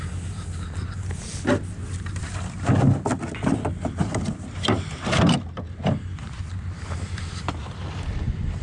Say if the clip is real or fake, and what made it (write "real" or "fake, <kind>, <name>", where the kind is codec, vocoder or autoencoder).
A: real